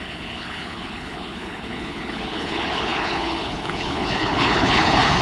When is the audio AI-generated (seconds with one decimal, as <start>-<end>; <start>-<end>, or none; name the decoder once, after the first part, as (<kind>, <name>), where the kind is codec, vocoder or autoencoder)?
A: 0.0-5.2 (codec, HILCodec)

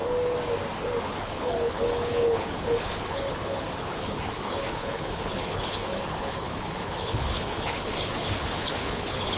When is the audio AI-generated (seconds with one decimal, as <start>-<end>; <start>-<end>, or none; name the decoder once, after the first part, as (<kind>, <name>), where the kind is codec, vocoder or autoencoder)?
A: 1.0-9.4 (codec, HILCodec)

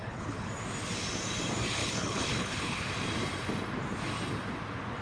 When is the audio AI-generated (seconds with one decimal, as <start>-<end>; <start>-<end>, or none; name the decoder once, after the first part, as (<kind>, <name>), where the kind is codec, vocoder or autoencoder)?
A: 0.0-0.5 (codec, HILCodec); 1.8-2.9

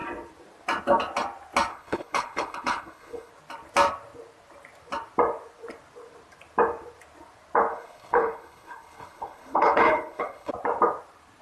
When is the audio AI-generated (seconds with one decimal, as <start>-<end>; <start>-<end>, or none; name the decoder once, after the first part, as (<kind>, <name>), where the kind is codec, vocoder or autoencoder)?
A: 1.7-3.3 (codec, HILCodec); 7.7-10.5

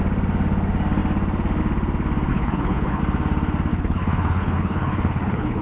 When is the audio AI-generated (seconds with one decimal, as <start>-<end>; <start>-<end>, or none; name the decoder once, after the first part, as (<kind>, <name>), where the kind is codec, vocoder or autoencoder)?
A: 2.3-3.0 (codec, HILCodec); 3.7-5.6

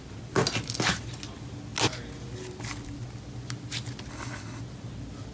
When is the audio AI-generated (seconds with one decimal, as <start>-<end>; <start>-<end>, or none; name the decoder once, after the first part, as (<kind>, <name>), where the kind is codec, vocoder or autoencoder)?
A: 4.1-4.6 (codec, HILCodec)

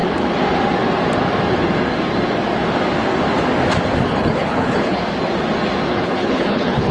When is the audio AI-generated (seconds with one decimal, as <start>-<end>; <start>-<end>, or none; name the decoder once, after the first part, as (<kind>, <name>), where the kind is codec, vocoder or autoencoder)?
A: 4.0-5.0 (codec, HILCodec); 5.9-6.9